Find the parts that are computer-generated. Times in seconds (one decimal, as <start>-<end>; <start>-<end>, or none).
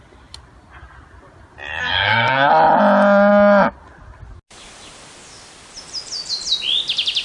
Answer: 1.8-2.5